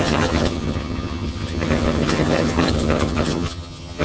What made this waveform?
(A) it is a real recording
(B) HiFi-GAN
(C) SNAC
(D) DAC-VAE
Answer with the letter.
B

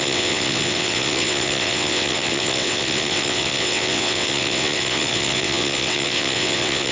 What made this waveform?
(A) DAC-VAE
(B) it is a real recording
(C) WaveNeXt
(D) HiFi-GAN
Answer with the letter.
C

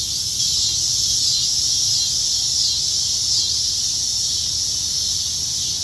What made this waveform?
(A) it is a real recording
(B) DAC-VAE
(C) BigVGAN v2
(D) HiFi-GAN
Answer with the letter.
A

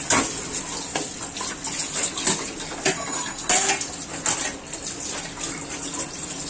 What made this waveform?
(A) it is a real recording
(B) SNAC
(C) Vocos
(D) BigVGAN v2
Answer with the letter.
A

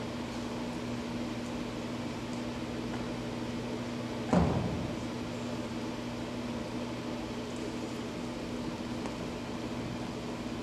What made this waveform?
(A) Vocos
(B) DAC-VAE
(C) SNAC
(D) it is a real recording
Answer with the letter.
D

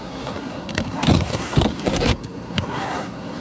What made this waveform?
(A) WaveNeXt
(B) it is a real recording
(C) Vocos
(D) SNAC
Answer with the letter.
D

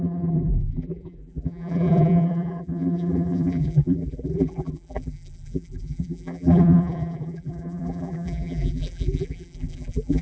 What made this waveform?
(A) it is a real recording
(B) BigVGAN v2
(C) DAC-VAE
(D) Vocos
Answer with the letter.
B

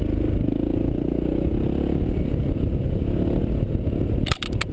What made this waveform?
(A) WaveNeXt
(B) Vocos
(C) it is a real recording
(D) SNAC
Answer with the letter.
C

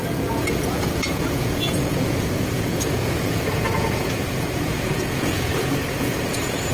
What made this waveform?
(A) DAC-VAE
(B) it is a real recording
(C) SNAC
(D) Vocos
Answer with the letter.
D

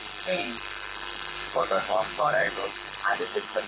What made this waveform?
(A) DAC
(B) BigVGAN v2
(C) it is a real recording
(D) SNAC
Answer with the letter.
D